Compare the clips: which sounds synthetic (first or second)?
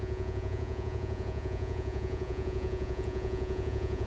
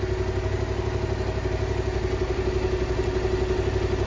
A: first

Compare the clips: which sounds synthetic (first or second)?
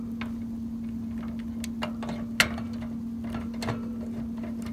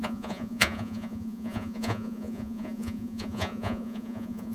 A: second